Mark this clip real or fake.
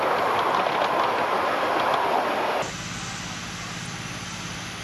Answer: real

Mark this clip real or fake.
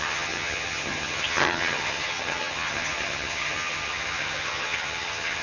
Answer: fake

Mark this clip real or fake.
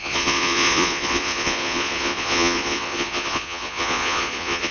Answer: fake